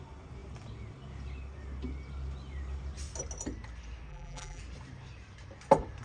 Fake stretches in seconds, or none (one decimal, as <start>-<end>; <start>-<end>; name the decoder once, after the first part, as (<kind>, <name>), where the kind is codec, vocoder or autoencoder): 4.1-4.6 (vocoder, BigVGAN v2)